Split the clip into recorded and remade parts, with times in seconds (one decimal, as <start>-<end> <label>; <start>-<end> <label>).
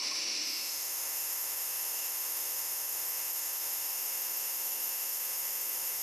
0.0-6.0 remade